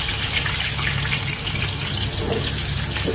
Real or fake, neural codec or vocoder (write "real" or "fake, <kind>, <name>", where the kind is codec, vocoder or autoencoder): real